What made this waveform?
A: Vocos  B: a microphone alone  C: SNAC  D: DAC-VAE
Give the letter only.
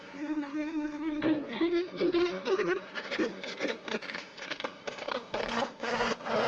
C